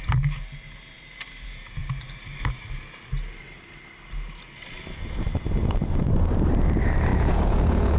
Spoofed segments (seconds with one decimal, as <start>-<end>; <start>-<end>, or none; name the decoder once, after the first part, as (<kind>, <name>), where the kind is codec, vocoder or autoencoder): 7.1-8.0 (vocoder, Vocos)